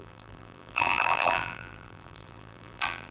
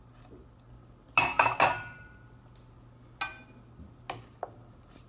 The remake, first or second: first